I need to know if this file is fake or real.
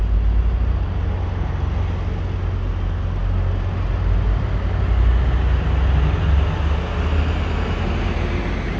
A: real